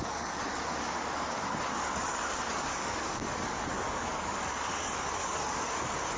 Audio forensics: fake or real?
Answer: fake